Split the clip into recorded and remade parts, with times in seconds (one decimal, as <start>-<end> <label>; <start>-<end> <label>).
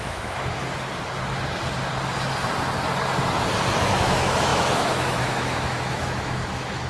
0.0-0.6 remade; 0.6-3.8 recorded; 3.8-6.9 remade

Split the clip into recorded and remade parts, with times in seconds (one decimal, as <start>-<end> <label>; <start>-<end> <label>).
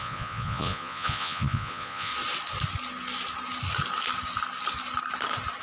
0.0-2.1 remade; 2.1-5.6 recorded